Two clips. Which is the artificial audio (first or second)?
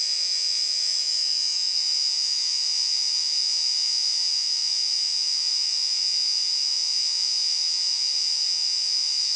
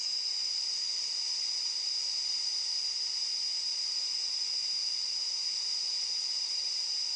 first